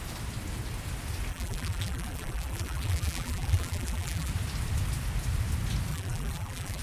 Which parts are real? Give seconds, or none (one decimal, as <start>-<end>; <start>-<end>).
0.0-1.3; 4.3-5.9